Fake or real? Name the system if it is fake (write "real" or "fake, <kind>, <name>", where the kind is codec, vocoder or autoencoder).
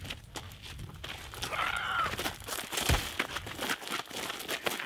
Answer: real